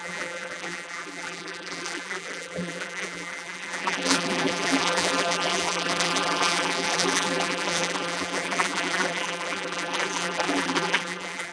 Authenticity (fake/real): fake